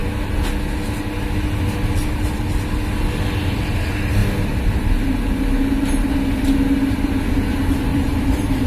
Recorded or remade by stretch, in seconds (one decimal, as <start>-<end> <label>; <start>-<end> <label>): 0.0-7.9 recorded; 7.9-8.7 remade